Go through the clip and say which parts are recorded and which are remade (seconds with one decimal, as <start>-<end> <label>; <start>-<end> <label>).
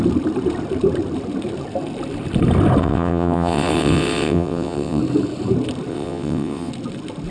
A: 0.0-2.8 recorded; 2.8-5.0 remade; 5.0-5.9 recorded; 5.9-6.7 remade; 6.7-7.3 recorded